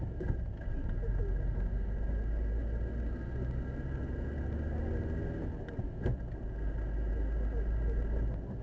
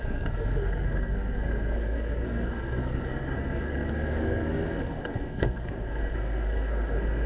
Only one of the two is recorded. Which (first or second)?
first